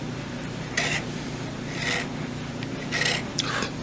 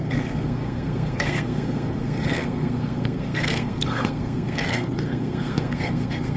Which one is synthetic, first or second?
second